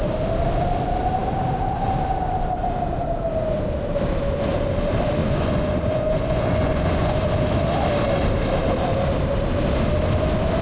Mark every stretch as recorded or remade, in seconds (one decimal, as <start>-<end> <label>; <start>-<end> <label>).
0.0-5.2 recorded; 5.2-7.2 remade; 7.2-10.6 recorded